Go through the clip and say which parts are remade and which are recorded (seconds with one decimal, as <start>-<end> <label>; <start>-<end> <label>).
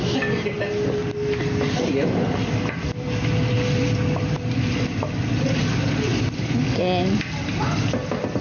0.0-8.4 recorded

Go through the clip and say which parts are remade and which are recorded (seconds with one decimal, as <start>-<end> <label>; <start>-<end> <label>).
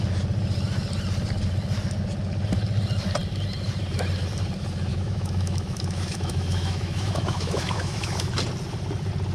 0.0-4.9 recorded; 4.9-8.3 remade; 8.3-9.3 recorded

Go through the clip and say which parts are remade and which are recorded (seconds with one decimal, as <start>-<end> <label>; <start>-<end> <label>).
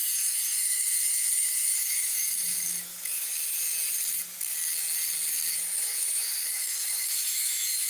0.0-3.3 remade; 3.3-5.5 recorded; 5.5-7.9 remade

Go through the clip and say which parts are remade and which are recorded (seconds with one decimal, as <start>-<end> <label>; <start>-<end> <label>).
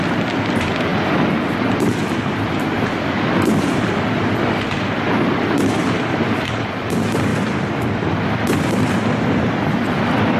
0.0-10.4 recorded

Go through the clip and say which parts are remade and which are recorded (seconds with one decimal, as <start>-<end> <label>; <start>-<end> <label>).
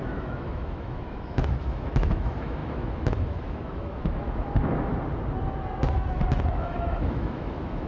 0.0-4.9 remade; 4.9-6.5 recorded; 6.5-7.9 remade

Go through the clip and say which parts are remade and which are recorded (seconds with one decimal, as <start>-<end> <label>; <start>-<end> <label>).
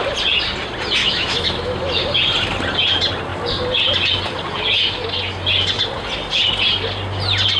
0.0-1.0 recorded; 1.0-1.7 remade; 1.7-7.6 recorded